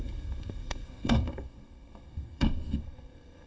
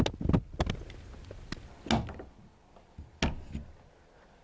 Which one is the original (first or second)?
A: second